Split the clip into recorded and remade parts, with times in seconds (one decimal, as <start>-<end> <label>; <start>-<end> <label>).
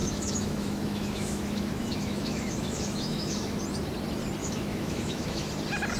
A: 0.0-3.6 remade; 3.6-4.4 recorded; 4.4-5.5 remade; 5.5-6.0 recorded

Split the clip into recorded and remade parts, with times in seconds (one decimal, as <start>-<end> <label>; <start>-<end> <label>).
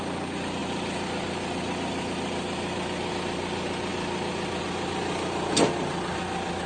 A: 0.0-6.7 recorded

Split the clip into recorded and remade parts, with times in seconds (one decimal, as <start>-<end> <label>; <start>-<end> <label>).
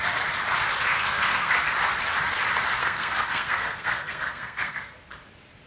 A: 0.0-0.9 recorded; 0.9-1.5 remade; 1.5-2.8 recorded; 2.8-4.9 remade; 4.9-5.7 recorded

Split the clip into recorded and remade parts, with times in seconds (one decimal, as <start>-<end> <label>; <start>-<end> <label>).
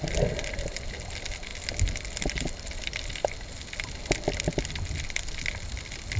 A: 0.0-6.2 recorded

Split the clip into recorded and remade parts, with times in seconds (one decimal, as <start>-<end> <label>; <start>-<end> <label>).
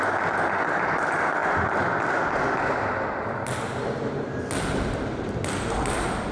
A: 0.0-6.3 recorded